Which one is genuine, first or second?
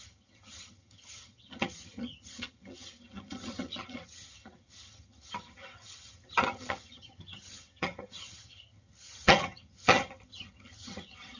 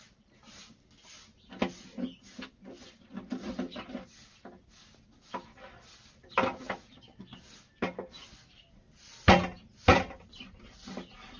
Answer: second